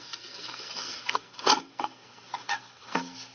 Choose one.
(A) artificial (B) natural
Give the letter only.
A